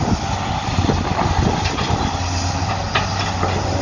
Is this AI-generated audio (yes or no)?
no